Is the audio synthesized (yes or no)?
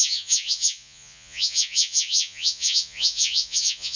yes